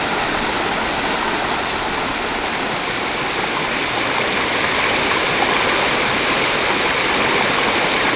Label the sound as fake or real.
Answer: real